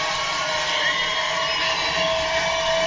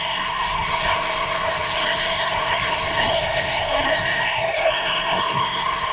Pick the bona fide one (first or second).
first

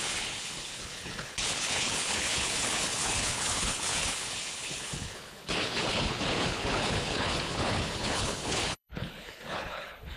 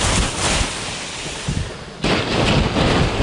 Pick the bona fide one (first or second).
second